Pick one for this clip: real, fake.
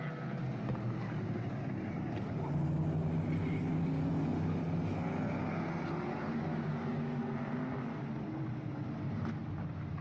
real